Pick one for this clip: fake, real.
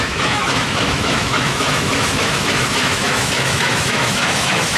fake